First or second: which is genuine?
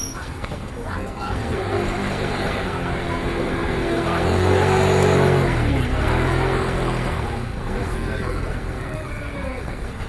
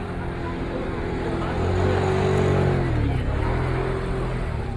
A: second